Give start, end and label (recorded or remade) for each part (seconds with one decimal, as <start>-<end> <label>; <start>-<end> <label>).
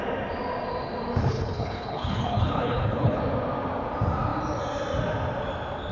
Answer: 0.0-1.2 recorded; 1.2-3.2 remade; 3.2-5.9 recorded